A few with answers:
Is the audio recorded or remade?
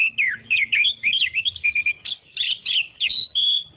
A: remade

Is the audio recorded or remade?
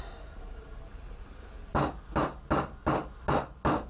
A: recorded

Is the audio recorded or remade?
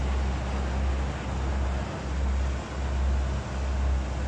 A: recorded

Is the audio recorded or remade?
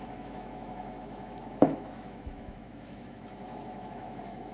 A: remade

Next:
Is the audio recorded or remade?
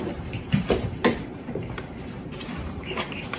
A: remade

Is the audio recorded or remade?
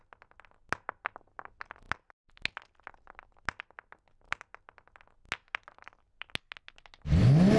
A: recorded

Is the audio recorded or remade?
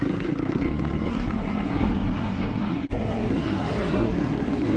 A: remade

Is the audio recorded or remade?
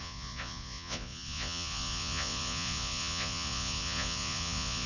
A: remade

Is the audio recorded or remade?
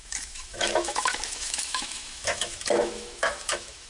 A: remade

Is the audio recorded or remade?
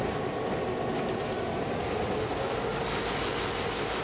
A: recorded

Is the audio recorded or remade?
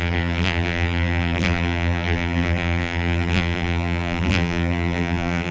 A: remade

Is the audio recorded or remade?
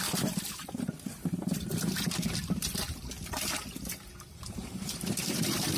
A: remade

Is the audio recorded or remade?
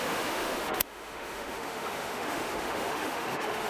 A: remade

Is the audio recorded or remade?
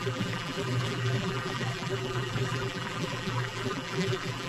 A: remade